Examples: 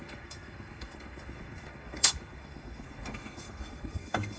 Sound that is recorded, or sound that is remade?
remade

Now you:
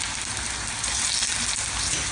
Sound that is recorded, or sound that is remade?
recorded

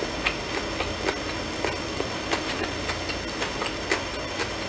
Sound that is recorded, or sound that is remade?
recorded